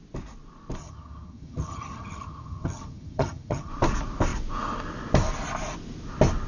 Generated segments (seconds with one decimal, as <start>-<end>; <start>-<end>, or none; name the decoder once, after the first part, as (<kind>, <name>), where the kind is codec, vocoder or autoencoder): 0.8-3.7 (vocoder, HiFi-GAN)